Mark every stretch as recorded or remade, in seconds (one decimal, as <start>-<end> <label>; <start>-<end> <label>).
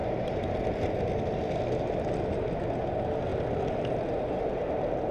0.0-5.1 recorded